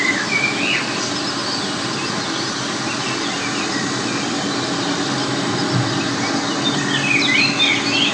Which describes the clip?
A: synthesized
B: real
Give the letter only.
B